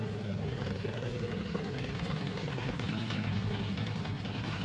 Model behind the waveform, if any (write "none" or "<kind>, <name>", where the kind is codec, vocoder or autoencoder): codec, SNAC